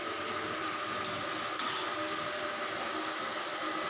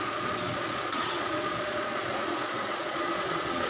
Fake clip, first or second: second